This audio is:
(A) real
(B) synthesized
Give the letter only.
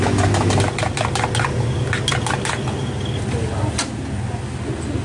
A